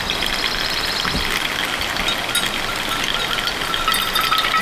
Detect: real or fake real